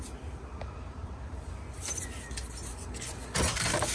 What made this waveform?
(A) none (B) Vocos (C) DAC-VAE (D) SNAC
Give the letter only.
A